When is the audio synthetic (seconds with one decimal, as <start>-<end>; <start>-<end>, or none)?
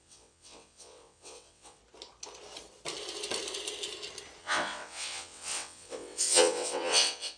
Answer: 0.0-1.8; 4.4-7.4